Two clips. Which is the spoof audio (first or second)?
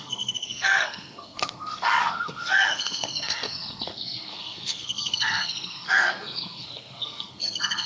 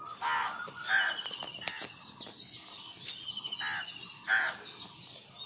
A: first